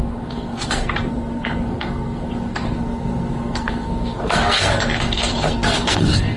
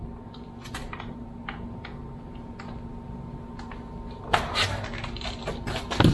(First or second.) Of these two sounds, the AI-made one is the first